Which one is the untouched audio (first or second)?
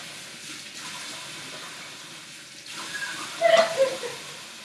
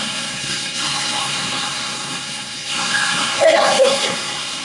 first